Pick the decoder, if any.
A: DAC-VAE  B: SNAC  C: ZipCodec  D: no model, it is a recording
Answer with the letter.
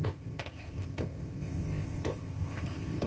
C